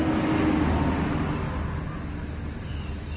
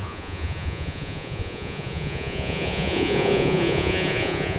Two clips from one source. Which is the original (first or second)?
first